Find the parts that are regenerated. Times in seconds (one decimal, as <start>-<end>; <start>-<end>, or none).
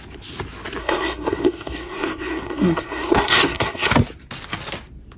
0.8-3.9